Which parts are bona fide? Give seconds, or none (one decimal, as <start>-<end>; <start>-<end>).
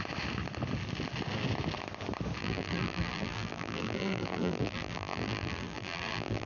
0.0-2.4